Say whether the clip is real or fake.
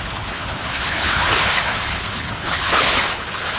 fake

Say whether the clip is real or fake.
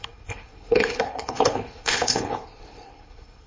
fake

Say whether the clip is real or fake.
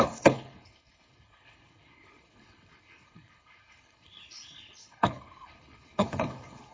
fake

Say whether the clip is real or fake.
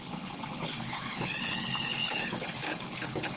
fake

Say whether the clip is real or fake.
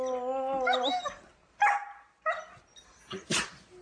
real